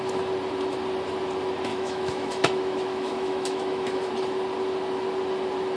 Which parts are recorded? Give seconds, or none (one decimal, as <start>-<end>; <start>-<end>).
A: 0.0-1.7; 4.1-5.8